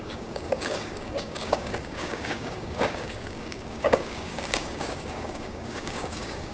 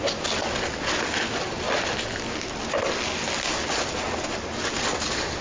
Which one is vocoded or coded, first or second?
first